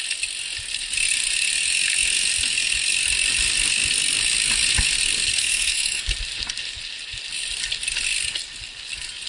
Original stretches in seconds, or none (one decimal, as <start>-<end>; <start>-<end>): 0.0-5.4; 6.0-9.3